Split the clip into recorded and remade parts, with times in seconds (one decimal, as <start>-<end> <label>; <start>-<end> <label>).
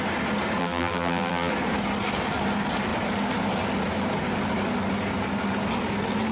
0.0-0.6 recorded; 0.6-1.5 remade; 1.5-6.3 recorded